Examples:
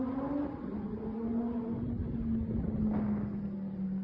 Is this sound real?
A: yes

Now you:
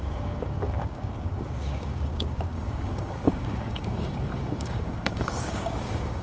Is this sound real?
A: no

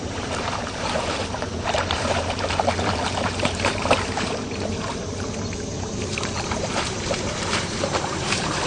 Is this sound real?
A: no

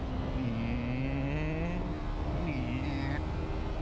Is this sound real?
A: yes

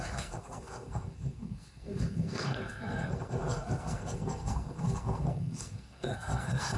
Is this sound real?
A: no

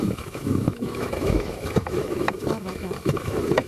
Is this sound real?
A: no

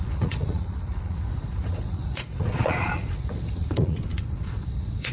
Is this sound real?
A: no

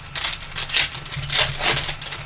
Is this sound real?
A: yes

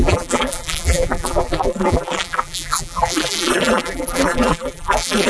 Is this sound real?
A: no